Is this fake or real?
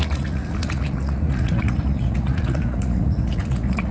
fake